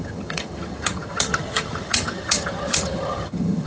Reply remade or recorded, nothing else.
remade